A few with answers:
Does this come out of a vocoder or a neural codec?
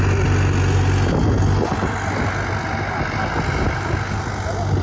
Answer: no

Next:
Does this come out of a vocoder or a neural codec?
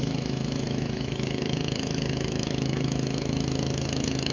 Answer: yes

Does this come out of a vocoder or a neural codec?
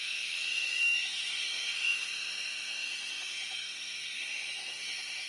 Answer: yes